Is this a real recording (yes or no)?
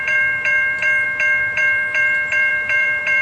no